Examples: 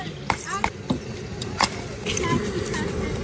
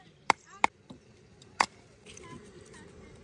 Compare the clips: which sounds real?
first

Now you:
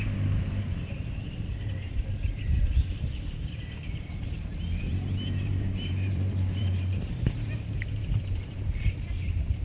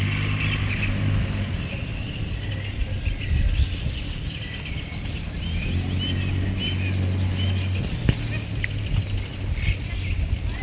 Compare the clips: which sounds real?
second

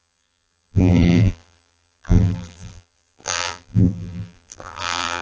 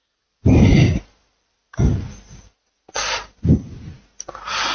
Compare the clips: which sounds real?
second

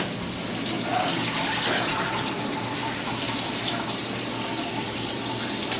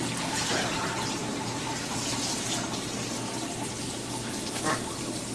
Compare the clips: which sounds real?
first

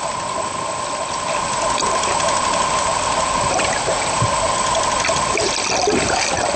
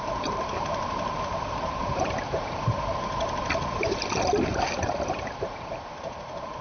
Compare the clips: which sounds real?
first